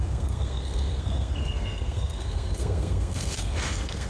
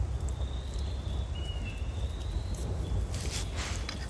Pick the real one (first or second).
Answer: second